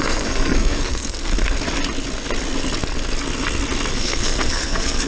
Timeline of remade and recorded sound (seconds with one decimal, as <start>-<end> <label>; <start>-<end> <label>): 0.0-1.3 remade; 1.3-3.9 recorded; 3.9-5.1 remade